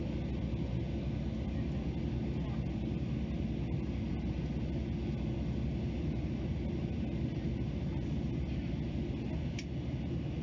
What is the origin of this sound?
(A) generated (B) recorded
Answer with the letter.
B